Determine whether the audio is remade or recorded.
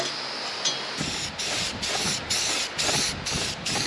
recorded